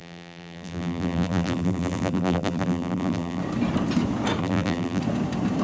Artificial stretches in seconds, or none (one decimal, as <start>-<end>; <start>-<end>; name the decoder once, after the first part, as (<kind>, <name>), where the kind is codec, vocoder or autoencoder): 0.0-3.4 (vocoder, BigVGAN v2); 4.4-5.0